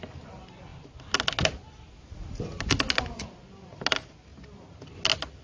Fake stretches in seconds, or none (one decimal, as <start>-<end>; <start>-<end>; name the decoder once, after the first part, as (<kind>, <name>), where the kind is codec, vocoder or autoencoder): none